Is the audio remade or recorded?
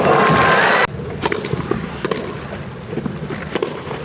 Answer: recorded